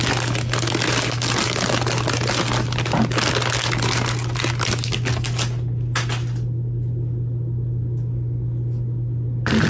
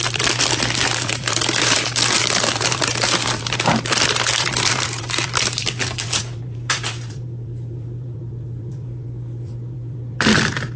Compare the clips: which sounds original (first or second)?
first